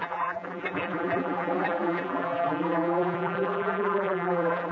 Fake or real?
fake